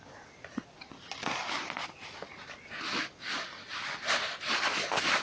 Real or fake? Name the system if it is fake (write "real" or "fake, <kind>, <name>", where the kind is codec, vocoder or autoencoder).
fake, vocoder, BigVGAN v2